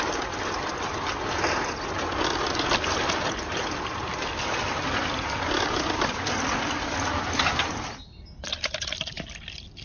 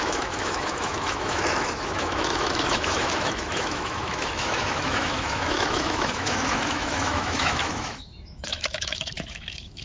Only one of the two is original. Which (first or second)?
first